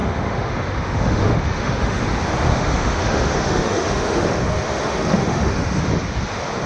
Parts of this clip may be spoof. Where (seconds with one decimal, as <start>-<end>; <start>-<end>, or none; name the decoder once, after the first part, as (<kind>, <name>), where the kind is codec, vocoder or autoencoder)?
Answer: 0.0-2.0 (autoencoder, DAC-VAE); 2.5-5.8